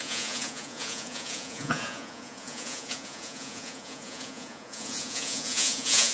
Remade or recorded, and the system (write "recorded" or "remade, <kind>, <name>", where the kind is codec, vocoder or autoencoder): remade, vocoder, Vocos